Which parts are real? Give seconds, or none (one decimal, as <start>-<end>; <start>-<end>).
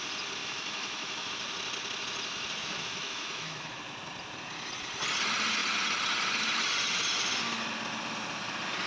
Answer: 0.0-0.4; 1.3-2.6; 3.8-8.9